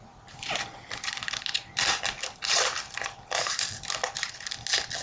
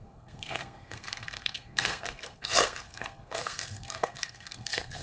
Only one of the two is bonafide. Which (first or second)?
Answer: first